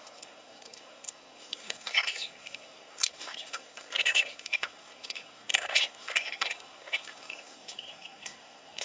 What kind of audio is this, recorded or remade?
remade